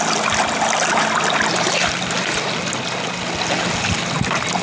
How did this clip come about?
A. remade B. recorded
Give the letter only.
B